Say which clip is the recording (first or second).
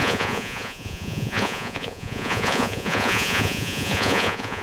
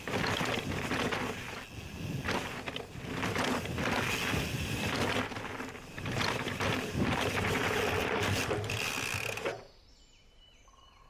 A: second